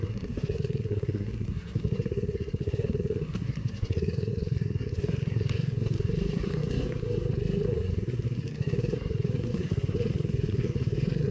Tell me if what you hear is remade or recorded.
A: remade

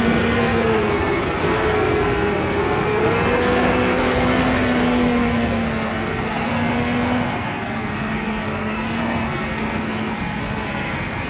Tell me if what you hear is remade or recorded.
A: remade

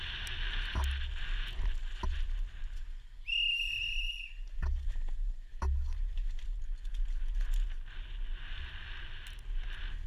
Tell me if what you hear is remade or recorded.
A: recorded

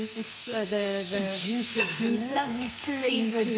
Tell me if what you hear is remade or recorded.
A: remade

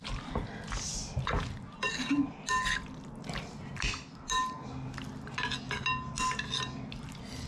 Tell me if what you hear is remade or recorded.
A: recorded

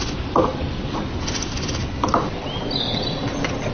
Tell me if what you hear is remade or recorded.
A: recorded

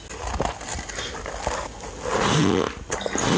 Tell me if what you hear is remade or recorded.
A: recorded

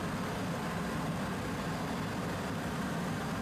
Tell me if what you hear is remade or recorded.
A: recorded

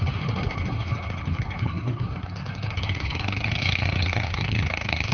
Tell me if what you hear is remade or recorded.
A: remade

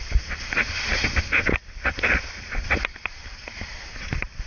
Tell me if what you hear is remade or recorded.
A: recorded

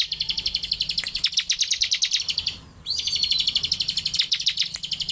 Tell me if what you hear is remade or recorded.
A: recorded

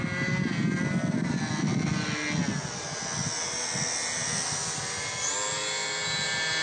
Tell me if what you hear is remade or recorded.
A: recorded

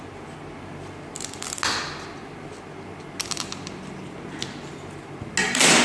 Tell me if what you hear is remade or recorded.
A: recorded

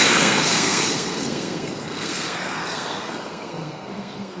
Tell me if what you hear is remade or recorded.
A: remade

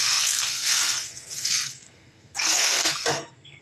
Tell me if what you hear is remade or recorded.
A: remade